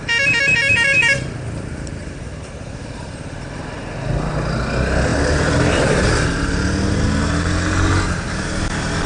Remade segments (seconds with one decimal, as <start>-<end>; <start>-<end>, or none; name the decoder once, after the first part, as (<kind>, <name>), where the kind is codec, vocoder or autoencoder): 1.0-3.8 (vocoder, BigVGAN v2)